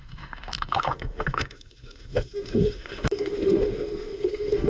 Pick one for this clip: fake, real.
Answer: fake